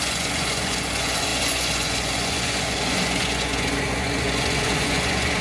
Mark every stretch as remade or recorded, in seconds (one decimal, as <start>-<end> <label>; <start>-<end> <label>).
0.0-5.4 remade